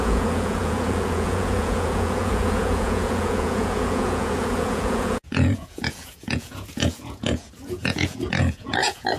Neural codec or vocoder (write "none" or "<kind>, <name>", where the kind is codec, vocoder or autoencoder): vocoder, Vocos